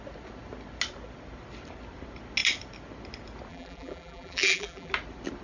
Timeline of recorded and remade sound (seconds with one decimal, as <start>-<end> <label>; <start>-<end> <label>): 0.0-3.5 recorded; 3.5-4.9 remade; 4.9-5.4 recorded